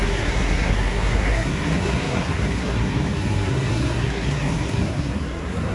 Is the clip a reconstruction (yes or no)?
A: yes